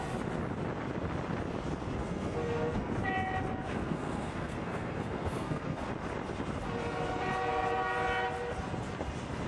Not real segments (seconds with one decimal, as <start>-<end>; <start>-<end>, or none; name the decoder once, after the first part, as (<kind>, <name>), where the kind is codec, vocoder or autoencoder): 2.0-2.9 (codec, SNAC); 3.7-5.9